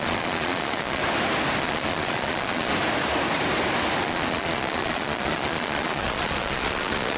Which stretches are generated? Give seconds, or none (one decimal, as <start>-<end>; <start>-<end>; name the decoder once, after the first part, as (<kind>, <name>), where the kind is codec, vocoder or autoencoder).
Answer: 0.0-1.0 (vocoder, Vocos); 1.6-2.7; 4.0-7.2